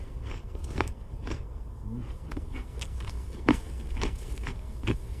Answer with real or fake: fake